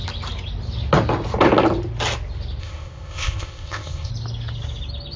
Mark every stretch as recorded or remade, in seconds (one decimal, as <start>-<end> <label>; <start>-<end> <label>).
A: 0.0-2.6 recorded; 2.6-4.1 remade; 4.1-5.2 recorded